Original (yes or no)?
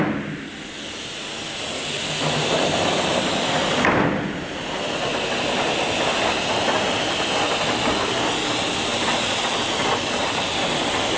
yes